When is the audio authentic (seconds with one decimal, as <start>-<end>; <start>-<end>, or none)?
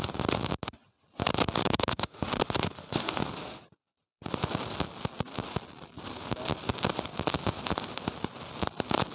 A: 0.0-1.6; 3.1-9.1